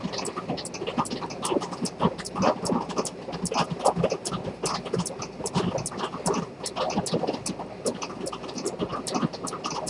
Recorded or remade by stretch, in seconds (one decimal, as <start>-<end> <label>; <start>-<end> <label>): 0.0-9.9 recorded

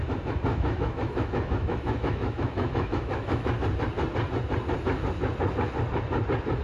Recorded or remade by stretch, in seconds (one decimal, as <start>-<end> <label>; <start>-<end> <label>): 0.0-0.5 recorded; 0.5-3.5 remade; 3.5-6.6 recorded

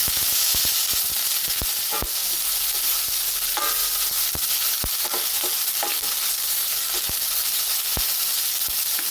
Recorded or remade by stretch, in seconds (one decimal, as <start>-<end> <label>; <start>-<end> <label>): 0.0-0.6 remade; 0.6-9.1 recorded

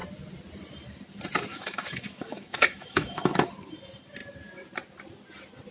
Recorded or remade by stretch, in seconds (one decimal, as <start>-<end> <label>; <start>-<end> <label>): 0.0-1.5 recorded; 1.5-3.5 remade; 3.5-5.7 recorded

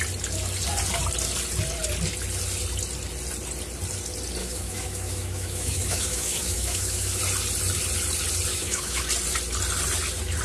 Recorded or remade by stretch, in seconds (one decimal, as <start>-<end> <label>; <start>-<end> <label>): 0.0-4.4 recorded; 4.4-7.2 remade; 7.2-8.5 recorded; 8.5-9.0 remade; 9.0-10.4 recorded

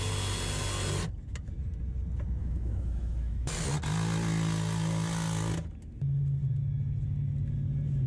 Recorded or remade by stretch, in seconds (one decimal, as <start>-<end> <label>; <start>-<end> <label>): 0.0-2.4 recorded; 2.4-3.5 remade; 3.5-8.1 recorded

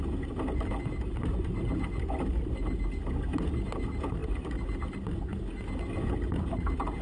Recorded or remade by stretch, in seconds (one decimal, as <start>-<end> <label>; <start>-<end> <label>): 0.0-7.0 recorded

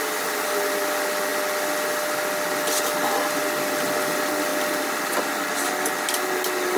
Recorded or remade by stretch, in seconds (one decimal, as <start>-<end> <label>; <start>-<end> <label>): 0.0-6.8 recorded